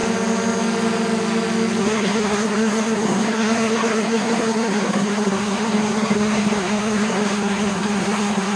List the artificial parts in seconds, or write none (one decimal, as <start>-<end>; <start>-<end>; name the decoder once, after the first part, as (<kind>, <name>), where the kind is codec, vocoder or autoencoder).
1.8-8.6 (codec, SNAC)